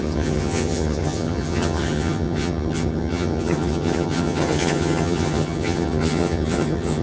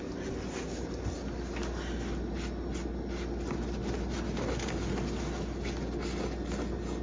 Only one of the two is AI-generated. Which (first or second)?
first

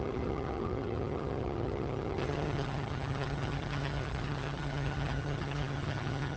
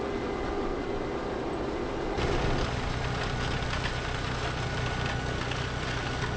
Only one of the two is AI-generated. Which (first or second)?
first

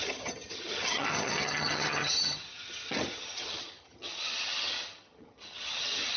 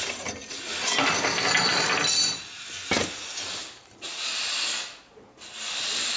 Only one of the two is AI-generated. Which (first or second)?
first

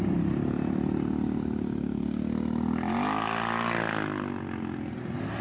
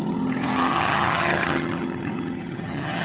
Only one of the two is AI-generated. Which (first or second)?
second